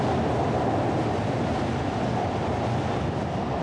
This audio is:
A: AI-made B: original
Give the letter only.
B